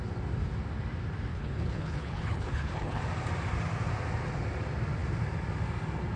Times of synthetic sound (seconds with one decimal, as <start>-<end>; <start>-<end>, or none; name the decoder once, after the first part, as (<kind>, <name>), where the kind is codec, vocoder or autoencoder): 1.3-3.0 (codec, HILCodec)